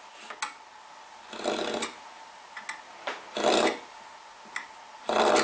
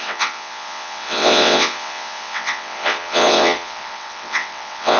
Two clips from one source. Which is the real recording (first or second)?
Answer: first